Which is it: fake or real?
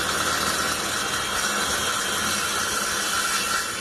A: real